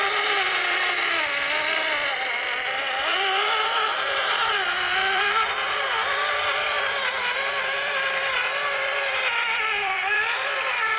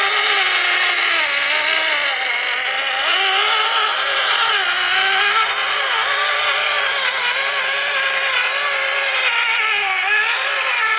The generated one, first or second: first